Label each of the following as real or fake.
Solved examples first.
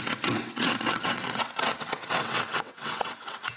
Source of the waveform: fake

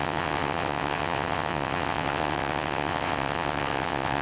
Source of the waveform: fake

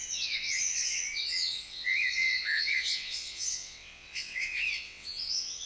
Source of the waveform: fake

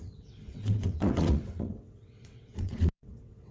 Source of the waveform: fake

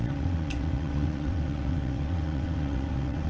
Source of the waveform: fake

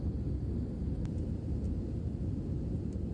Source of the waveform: real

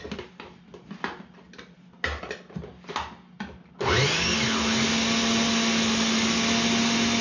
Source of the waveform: real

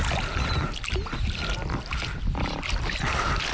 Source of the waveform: real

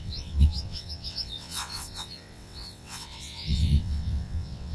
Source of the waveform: fake